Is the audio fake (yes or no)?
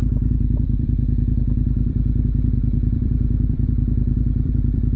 yes